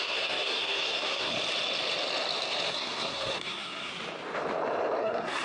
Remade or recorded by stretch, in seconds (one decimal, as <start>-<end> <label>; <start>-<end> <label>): 0.0-1.3 remade; 1.3-2.7 recorded; 2.7-3.9 remade; 3.9-5.0 recorded; 5.0-5.4 remade